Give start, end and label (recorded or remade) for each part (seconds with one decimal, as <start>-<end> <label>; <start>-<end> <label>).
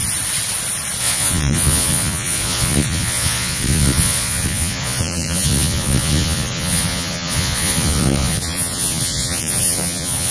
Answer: 0.0-1.0 recorded; 1.0-10.3 remade